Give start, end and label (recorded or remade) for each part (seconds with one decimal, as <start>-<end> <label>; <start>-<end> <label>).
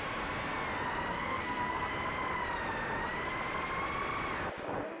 0.0-1.1 recorded; 1.1-1.9 remade; 1.9-5.0 recorded